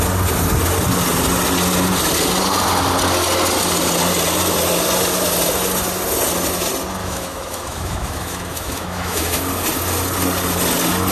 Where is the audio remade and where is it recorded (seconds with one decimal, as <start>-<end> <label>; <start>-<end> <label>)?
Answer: 0.0-7.0 recorded; 7.0-9.4 remade; 9.4-11.1 recorded